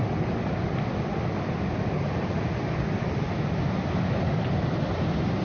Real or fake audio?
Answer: real